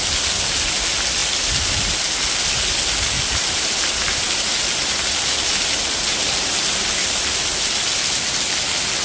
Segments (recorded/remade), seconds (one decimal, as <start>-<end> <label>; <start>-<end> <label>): 0.0-9.0 recorded